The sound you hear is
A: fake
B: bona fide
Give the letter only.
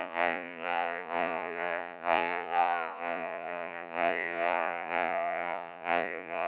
A